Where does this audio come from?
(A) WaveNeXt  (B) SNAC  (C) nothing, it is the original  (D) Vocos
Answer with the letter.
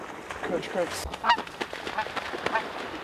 C